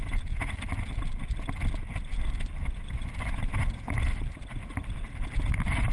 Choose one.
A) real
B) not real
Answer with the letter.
A